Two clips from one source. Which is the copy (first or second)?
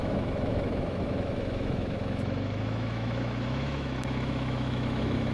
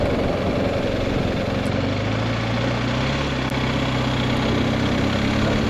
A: first